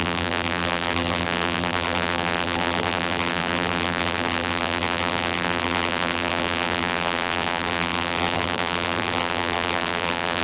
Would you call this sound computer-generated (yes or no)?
yes